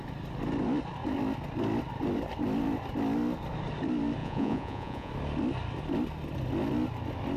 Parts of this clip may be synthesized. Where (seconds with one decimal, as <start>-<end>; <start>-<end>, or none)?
4.2-5.1